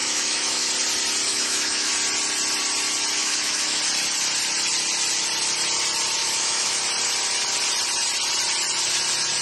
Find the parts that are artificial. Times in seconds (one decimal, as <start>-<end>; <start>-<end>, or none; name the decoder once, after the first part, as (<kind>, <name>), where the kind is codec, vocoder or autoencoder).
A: 0.0-0.7 (autoencoder, DAC-VAE); 1.3-1.9; 3.2-3.8; 6.2-6.8